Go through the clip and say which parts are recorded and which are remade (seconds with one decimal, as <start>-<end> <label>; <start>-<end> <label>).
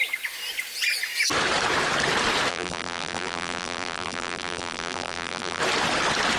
0.0-2.5 recorded; 2.5-5.6 remade; 5.6-6.4 recorded